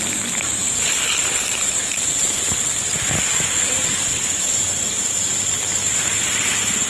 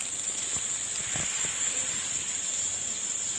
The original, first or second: second